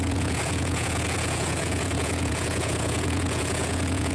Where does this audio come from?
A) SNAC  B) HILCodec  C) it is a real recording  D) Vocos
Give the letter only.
D